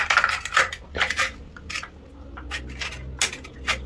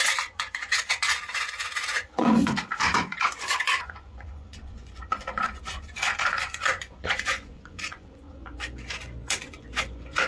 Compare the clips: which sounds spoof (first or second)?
second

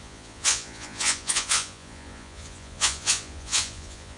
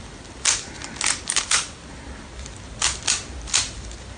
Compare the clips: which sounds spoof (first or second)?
first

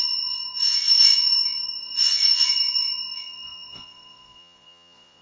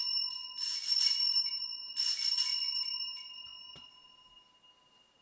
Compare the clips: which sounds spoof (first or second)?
first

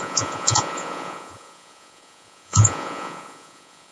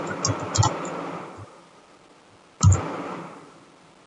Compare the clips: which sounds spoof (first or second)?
first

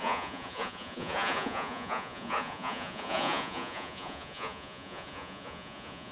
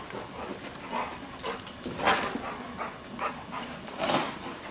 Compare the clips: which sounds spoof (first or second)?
first